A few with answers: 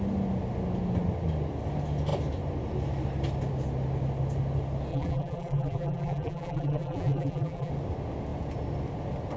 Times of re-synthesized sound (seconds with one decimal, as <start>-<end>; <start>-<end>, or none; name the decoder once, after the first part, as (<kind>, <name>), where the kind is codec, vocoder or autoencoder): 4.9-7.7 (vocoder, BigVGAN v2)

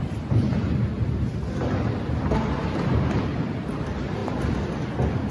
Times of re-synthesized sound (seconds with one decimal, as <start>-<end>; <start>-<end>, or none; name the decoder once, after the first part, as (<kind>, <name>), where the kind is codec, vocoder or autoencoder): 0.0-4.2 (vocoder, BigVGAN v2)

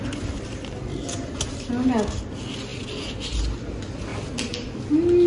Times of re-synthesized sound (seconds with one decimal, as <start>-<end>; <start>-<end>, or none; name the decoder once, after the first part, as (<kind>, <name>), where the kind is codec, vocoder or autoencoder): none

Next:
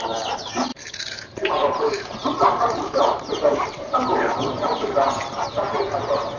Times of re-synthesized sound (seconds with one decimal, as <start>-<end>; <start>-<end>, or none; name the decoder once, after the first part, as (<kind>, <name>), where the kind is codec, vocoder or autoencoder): 0.7-4.5 (vocoder, BigVGAN v2)